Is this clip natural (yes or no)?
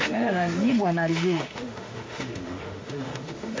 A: no